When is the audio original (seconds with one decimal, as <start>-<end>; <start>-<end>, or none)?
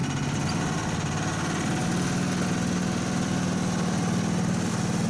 0.0-5.1